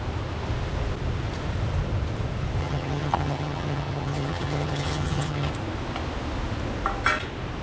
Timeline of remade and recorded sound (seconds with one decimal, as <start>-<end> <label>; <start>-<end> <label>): 0.0-2.6 recorded; 2.6-5.5 remade; 5.5-7.6 recorded